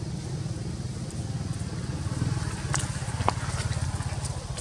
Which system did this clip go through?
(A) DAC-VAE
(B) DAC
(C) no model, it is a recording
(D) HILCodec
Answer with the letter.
C